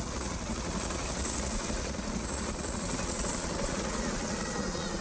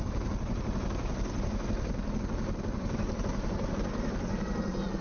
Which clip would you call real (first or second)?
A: second